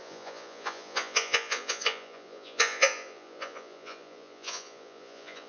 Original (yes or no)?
no